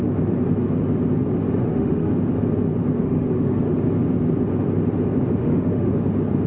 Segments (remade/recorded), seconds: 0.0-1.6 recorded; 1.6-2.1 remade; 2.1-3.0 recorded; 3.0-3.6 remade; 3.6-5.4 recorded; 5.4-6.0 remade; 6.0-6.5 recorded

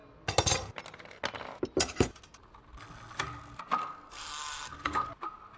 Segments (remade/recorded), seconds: 0.0-3.8 recorded; 3.8-5.1 remade; 5.1-5.6 recorded